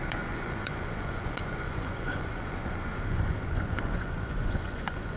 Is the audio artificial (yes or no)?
yes